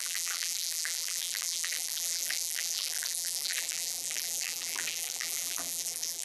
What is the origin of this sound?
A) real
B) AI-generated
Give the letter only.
B